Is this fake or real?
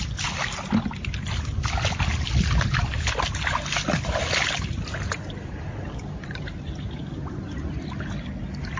real